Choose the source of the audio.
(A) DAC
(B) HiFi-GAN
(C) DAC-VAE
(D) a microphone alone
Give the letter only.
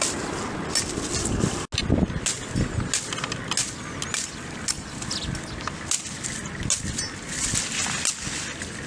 D